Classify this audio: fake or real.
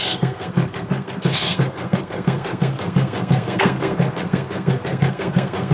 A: fake